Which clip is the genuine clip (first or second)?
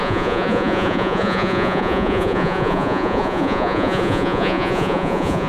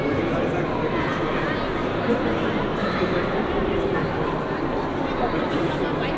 second